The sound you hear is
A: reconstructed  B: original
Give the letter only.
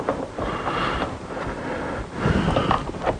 B